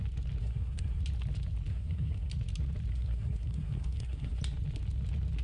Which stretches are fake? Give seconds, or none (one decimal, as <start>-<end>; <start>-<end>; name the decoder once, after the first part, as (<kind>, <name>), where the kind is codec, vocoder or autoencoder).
0.4-1.0 (codec, SNAC); 1.7-2.3; 2.9-4.4